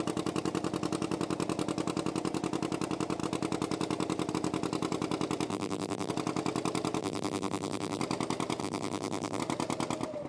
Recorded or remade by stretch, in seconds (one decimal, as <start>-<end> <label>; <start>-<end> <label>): 0.0-5.5 recorded; 5.5-6.1 remade; 6.1-7.0 recorded; 7.0-8.0 remade; 8.0-8.6 recorded; 8.6-9.4 remade; 9.4-10.3 recorded